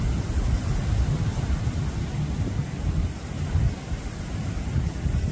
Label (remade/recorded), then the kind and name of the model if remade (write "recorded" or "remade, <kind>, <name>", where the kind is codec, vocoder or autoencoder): recorded